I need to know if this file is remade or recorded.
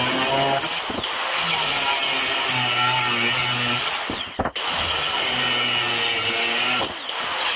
recorded